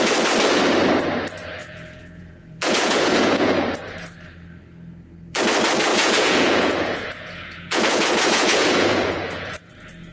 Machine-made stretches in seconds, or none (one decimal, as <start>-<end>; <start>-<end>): 1.6-3.8; 5.9-10.1